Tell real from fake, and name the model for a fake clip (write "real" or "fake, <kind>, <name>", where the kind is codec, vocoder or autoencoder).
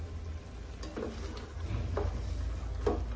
real